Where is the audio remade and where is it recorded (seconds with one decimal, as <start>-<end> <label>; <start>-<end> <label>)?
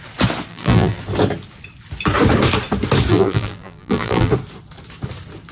0.0-0.5 recorded; 0.5-1.0 remade; 1.0-3.1 recorded; 3.1-4.3 remade; 4.3-5.5 recorded